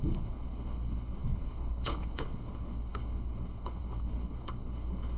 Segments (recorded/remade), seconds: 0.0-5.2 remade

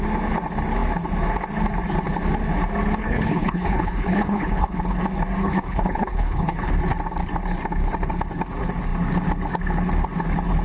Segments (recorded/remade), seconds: 0.0-3.0 recorded; 3.0-5.0 remade; 5.0-5.4 recorded; 5.4-6.7 remade; 6.7-10.6 recorded

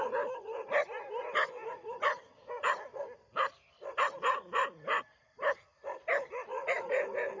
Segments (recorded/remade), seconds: 0.0-7.4 recorded

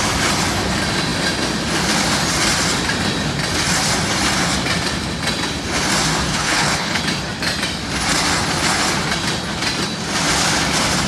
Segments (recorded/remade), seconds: 0.0-6.3 recorded; 6.3-7.0 remade; 7.0-11.1 recorded